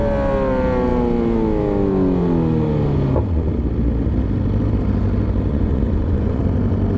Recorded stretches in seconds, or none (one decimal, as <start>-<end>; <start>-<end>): 0.0-5.5; 6.4-7.0